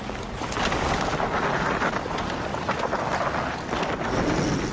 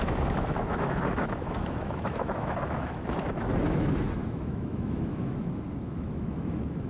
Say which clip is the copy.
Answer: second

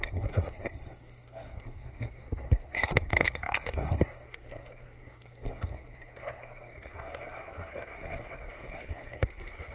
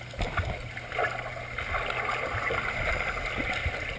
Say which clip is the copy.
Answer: first